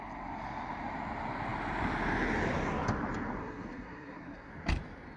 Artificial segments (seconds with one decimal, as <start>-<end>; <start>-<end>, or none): 3.4-4.5